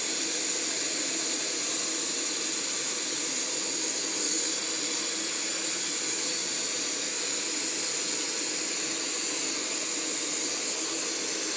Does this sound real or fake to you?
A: real